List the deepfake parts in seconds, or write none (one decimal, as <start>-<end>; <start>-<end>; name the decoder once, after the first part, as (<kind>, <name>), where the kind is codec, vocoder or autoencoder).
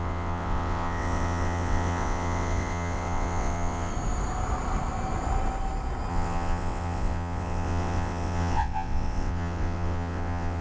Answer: 0.0-3.9 (vocoder, WaveNeXt); 6.1-10.6